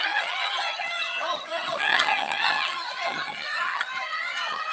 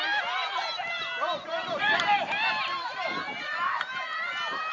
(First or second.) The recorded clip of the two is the second